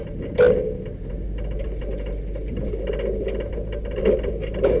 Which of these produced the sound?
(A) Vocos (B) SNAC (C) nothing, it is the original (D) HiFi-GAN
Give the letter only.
C